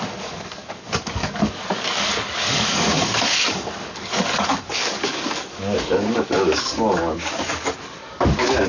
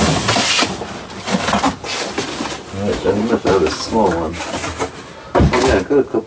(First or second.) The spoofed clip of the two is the first